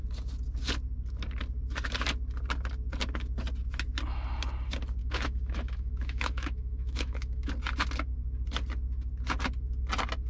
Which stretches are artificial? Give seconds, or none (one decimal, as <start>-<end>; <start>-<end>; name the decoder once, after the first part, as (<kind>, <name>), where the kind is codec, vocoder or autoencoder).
5.0-7.5 (autoencoder, DAC-VAE)